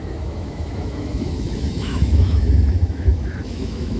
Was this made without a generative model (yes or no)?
no